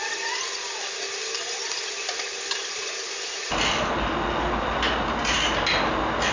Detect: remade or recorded recorded